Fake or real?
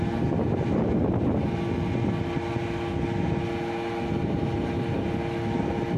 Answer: real